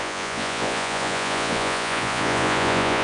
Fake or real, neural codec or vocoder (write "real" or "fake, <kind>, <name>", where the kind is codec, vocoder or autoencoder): fake, vocoder, Vocos